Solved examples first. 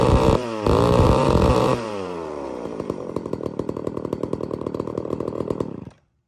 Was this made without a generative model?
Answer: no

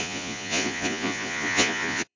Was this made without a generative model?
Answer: no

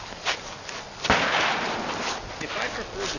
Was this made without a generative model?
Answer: yes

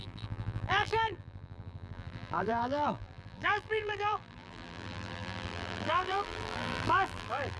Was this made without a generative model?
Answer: no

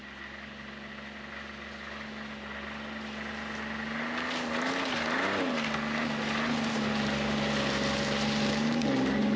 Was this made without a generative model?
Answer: yes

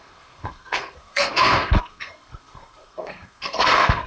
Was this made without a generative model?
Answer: no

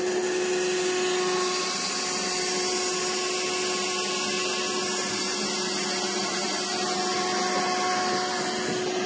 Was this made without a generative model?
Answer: yes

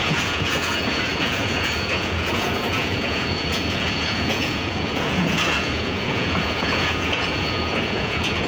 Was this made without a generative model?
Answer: no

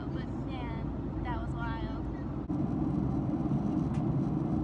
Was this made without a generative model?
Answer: yes